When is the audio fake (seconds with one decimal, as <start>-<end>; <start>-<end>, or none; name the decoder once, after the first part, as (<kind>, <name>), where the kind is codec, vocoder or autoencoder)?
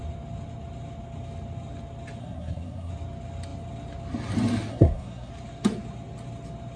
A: 2.2-2.9 (codec, SNAC); 4.7-5.3